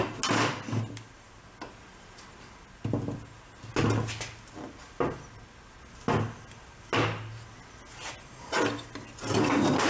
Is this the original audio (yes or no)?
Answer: yes